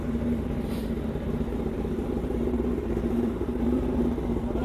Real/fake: fake